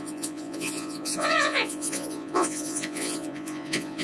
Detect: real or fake fake